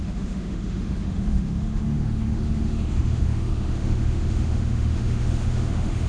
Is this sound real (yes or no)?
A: no